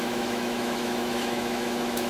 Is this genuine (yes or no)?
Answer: no